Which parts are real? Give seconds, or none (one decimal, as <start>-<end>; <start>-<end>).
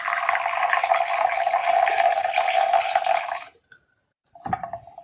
0.0-1.6; 4.4-5.0